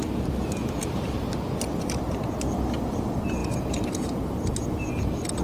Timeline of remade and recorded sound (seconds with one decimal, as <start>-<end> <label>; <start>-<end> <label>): 0.0-3.4 recorded; 3.4-5.0 remade; 5.0-5.4 recorded